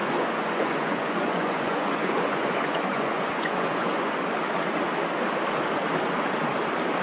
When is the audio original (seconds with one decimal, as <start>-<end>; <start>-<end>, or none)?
4.2-7.0